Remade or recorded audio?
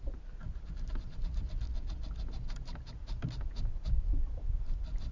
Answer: recorded